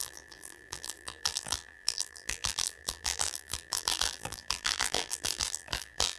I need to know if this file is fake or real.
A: fake